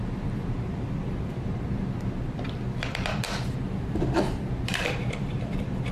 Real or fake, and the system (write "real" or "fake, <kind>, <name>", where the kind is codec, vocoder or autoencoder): fake, vocoder, BigVGAN v2